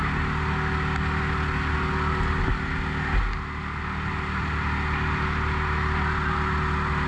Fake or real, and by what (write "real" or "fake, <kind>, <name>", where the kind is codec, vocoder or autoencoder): real